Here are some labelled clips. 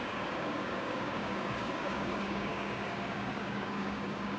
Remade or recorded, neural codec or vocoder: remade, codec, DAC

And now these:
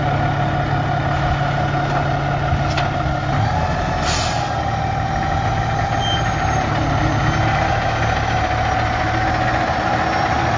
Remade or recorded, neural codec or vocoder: recorded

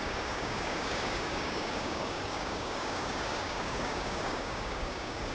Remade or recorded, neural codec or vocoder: remade, codec, DAC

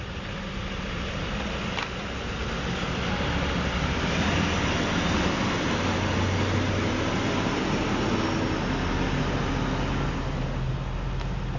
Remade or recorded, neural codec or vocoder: recorded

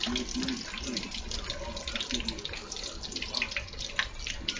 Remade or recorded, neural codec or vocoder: recorded